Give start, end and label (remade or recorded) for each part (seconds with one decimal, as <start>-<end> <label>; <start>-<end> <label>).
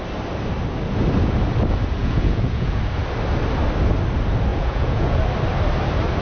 0.0-2.0 recorded; 2.0-2.8 remade; 2.8-4.5 recorded; 4.5-5.2 remade; 5.2-6.2 recorded